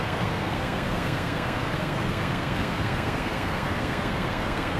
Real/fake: fake